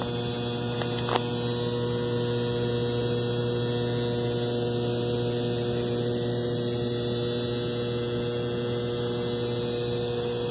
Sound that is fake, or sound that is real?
real